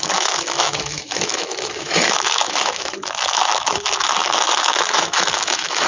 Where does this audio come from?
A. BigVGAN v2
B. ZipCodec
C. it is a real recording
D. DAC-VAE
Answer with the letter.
D